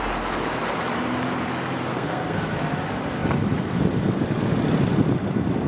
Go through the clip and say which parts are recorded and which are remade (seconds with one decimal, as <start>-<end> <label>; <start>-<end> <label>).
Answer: 0.0-1.9 recorded; 1.9-2.4 remade; 2.4-5.7 recorded